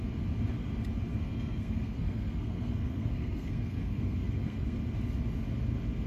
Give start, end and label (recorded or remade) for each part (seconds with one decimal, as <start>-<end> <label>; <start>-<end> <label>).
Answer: 0.0-1.1 recorded; 1.1-4.8 remade; 4.8-6.1 recorded